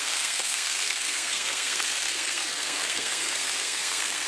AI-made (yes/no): yes